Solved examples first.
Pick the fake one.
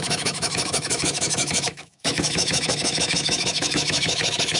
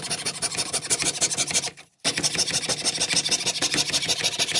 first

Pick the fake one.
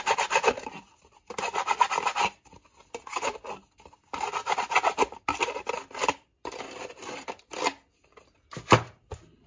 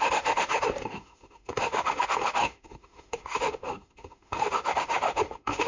second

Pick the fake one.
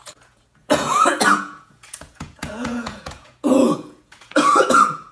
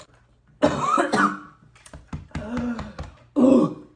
first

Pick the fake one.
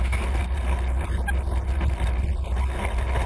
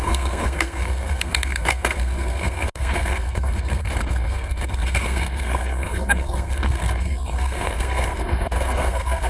second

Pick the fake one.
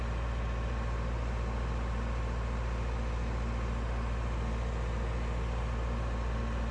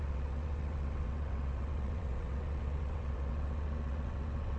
second